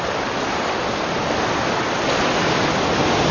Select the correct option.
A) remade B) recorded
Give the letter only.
B